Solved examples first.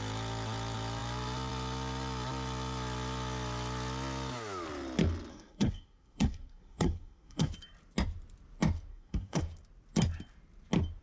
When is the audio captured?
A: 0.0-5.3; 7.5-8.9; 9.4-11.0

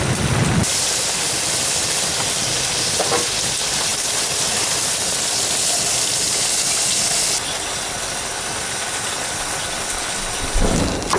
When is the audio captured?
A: 0.0-0.6; 2.9-11.2

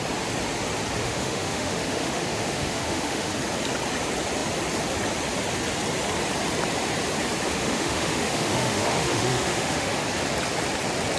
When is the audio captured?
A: 0.0-1.0; 3.3-7.5; 9.9-11.2

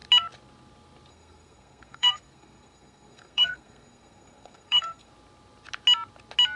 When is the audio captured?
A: 0.0-1.1; 5.1-6.6

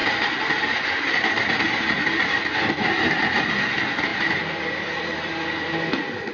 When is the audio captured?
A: 0.0-4.1; 5.3-6.3